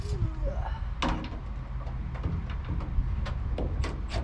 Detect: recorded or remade recorded